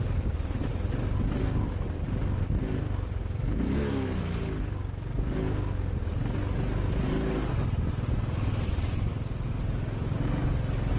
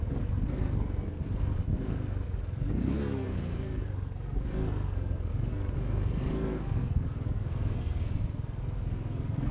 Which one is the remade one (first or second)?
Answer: second